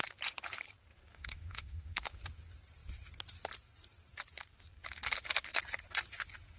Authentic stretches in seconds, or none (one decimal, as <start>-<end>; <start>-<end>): 0.0-1.1; 2.2-6.6